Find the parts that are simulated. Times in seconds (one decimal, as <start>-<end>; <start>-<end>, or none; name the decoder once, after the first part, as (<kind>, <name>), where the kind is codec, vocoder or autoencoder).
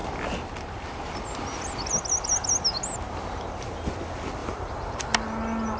4.4-5.0 (vocoder, BigVGAN v2)